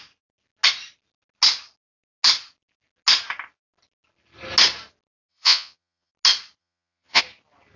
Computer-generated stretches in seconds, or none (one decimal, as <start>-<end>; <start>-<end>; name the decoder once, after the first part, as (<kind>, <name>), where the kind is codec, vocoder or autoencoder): 5.3-6.1 (vocoder, Vocos); 6.6-7.2